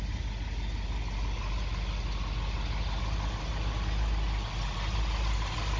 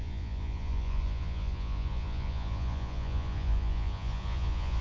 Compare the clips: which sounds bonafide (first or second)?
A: first